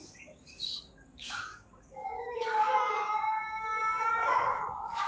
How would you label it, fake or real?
fake